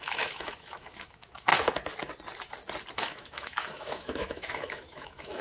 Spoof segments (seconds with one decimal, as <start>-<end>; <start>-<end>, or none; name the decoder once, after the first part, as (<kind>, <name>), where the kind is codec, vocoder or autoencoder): 0.0-1.5 (autoencoder, DAC-VAE); 2.9-5.4